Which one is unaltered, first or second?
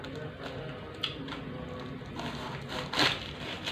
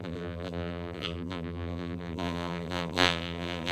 first